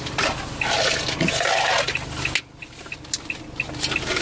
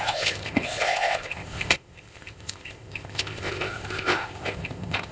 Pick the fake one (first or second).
second